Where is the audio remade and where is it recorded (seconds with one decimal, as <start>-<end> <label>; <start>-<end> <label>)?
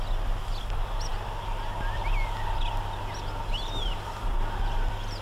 0.0-5.2 recorded